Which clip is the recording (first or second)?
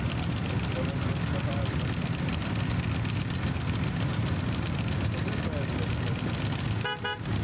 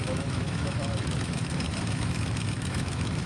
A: first